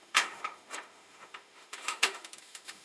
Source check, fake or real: fake